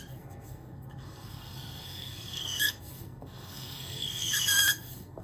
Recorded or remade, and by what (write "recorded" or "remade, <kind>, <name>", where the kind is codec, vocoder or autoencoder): remade, codec, SNAC